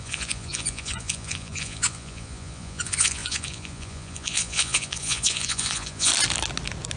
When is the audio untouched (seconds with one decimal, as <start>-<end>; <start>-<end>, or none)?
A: 6.1-7.0